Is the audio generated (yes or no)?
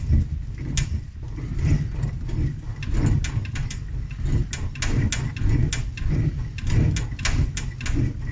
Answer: no